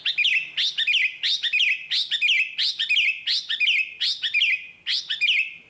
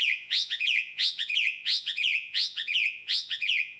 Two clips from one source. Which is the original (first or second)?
first